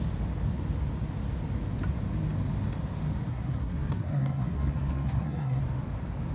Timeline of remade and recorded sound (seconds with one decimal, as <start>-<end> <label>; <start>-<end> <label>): 0.0-3.3 recorded; 3.3-5.6 remade; 5.6-6.3 recorded